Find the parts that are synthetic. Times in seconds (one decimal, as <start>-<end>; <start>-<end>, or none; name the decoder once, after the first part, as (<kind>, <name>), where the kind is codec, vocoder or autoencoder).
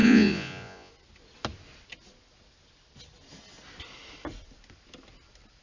0.0-0.9 (vocoder, Vocos)